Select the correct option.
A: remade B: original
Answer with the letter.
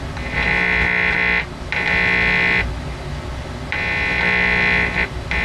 B